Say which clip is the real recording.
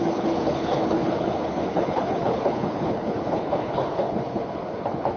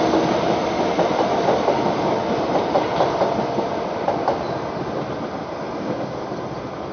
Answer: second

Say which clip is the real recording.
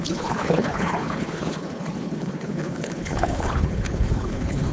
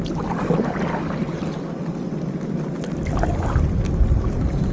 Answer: second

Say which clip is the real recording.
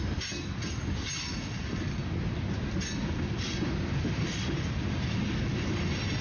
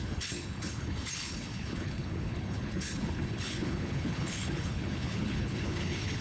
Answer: first